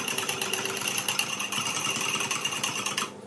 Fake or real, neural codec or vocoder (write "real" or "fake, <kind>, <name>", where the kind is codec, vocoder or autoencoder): real